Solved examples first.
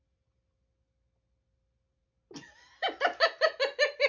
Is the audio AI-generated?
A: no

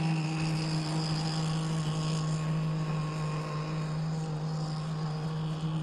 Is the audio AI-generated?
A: no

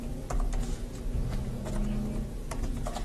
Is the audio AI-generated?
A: no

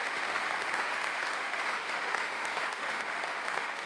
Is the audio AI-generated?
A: yes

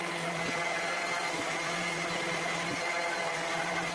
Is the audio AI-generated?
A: no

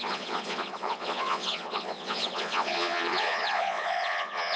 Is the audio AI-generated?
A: yes